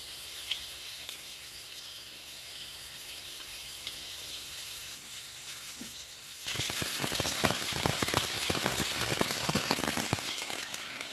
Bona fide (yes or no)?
no